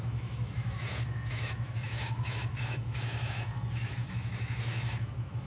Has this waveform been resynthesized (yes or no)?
yes